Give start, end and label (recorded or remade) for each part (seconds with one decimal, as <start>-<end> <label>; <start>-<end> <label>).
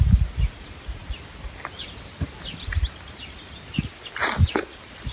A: 0.0-5.1 recorded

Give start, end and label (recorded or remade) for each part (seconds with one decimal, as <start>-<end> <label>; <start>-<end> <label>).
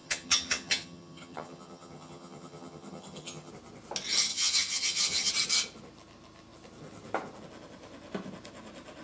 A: 0.0-3.5 remade; 3.5-4.3 recorded; 4.3-5.3 remade; 5.3-9.0 recorded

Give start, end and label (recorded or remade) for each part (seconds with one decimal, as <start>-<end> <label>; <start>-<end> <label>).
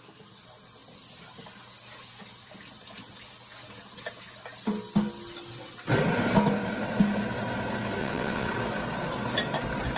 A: 0.0-8.0 recorded; 8.0-8.5 remade; 8.5-10.0 recorded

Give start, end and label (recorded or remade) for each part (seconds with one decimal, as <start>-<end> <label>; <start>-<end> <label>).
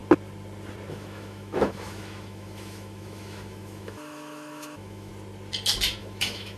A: 0.0-0.9 recorded; 0.9-5.1 remade; 5.1-6.0 recorded; 6.0-6.6 remade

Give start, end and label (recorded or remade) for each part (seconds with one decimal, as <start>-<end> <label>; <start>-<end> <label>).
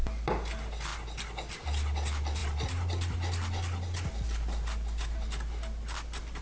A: 0.0-6.4 recorded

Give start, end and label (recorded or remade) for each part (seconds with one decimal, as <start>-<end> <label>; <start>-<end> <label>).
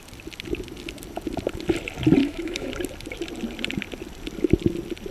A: 0.0-2.2 recorded; 2.2-2.7 remade; 2.7-5.1 recorded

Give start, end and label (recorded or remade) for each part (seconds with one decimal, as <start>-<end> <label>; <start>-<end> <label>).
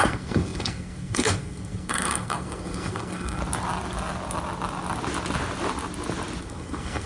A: 0.0-3.4 remade; 3.4-6.4 recorded; 6.4-7.1 remade